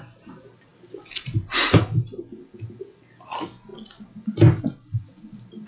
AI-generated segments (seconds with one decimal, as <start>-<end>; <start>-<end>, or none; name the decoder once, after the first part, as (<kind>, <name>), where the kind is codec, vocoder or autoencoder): none